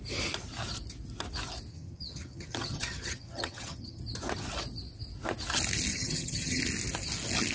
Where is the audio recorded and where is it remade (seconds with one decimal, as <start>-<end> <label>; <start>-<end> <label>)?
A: 0.0-1.7 recorded; 1.7-4.0 remade; 4.0-5.9 recorded; 5.9-6.6 remade; 6.6-7.5 recorded

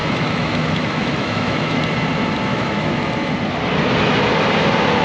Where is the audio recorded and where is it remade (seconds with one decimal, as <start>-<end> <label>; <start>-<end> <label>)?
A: 0.0-1.8 remade; 1.8-2.5 recorded; 2.5-3.0 remade; 3.0-5.0 recorded

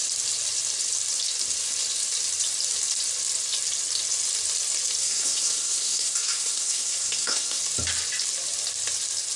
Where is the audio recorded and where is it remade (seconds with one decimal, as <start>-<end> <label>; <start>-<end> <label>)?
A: 0.0-5.0 recorded; 5.0-7.6 remade; 7.6-9.4 recorded

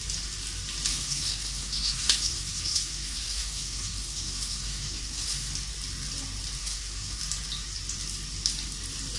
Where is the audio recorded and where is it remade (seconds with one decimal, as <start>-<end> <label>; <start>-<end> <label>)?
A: 0.0-0.9 recorded; 0.9-5.5 remade; 5.5-6.6 recorded; 6.6-7.2 remade; 7.2-9.2 recorded

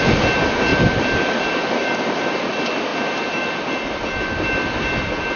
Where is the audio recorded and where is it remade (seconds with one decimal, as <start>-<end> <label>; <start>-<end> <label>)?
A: 0.0-0.7 recorded; 0.7-2.5 remade; 2.5-5.4 recorded

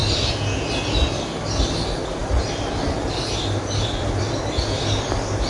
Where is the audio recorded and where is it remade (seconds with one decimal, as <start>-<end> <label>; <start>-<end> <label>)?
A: 0.0-2.2 recorded; 2.2-4.4 remade; 4.4-5.5 recorded

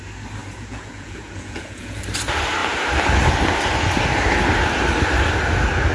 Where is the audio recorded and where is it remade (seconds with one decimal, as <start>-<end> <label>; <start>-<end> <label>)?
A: 0.0-0.4 recorded; 0.4-2.0 remade; 2.0-5.9 recorded

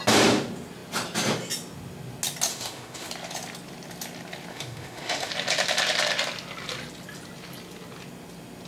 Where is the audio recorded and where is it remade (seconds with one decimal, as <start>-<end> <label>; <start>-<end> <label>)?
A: 0.0-2.5 recorded; 2.5-3.1 remade; 3.1-4.5 recorded; 4.5-5.3 remade; 5.3-8.7 recorded